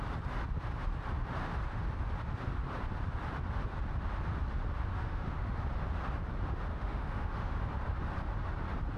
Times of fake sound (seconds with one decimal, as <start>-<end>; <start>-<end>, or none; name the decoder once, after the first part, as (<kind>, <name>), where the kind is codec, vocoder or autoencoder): 4.9-5.6 (autoencoder, DAC-VAE); 6.7-7.5